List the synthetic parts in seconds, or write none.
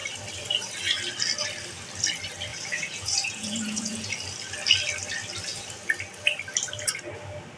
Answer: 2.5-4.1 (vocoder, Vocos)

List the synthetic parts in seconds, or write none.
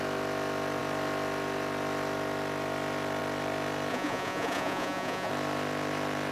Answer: 3.9-5.3 (vocoder, Vocos)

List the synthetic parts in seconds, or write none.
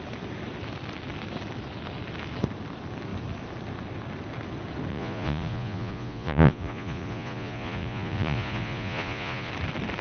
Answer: 4.9-9.5 (vocoder, Vocos)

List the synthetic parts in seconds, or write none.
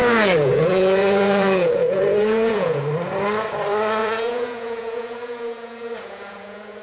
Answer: 0.0-2.8 (vocoder, Vocos); 4.0-6.8